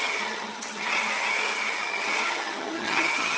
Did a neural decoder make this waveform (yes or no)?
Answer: yes